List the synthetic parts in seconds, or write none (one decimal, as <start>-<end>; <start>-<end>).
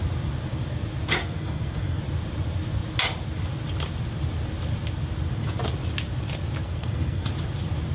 1.2-2.0; 6.6-7.3